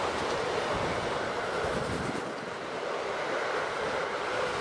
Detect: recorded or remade remade